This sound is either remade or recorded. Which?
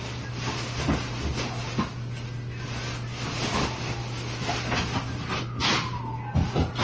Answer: recorded